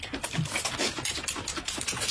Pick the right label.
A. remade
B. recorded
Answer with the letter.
B